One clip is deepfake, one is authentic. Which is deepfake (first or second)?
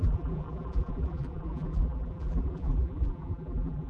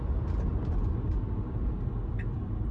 first